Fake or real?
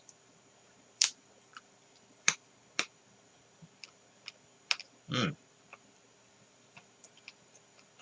fake